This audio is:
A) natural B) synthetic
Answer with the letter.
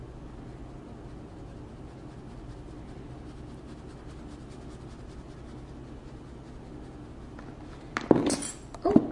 A